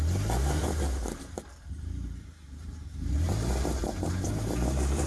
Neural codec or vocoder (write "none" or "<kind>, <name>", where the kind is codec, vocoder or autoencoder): vocoder, BigVGAN v2